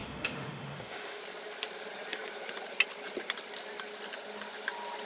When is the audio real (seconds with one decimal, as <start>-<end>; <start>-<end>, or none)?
1.2-5.1